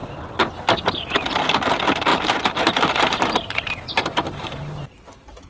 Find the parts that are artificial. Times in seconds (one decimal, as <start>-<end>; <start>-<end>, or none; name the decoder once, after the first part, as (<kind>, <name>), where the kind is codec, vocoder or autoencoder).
2.1-5.5 (vocoder, BigVGAN v2)